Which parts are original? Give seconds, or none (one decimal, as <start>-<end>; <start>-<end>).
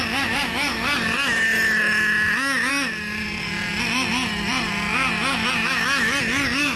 1.5-2.7; 4.9-6.2